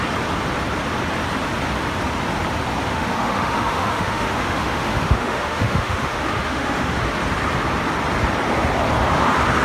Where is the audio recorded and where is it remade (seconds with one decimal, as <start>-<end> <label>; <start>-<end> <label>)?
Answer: 0.0-2.9 recorded; 2.9-7.0 remade; 7.0-9.6 recorded